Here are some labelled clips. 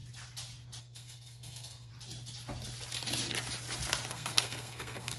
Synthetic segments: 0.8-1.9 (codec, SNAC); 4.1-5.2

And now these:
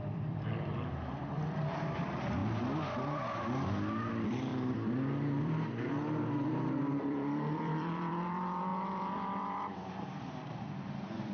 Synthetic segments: 0.0-2.4 (vocoder, BigVGAN v2); 4.1-4.5; 5.4-11.3

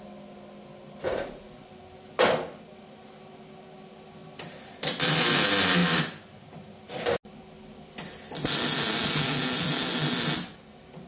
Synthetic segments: none

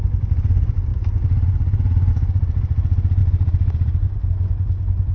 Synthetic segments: 0.9-2.1 (vocoder, BigVGAN v2); 3.2-4.3

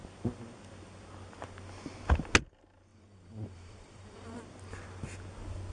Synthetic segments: 2.9-4.4 (vocoder, BigVGAN v2)

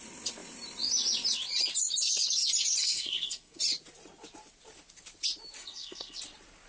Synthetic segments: 2.8-3.6 (codec, SNAC); 5.6-6.2

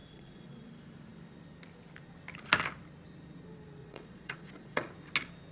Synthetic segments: 0.0-0.7 (vocoder, Vocos); 3.8-4.9

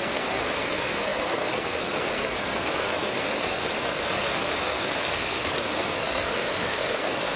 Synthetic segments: 0.0-7.4 (codec, SNAC)